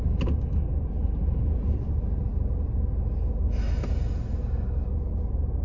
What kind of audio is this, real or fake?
real